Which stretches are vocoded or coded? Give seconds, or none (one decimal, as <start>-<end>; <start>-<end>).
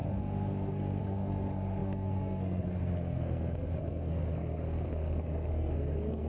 0.0-6.3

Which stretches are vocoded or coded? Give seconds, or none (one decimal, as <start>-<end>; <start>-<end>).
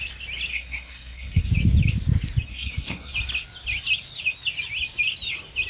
0.5-1.5; 2.5-3.1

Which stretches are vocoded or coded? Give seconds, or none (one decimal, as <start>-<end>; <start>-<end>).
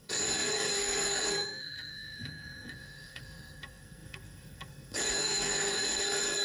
0.0-6.4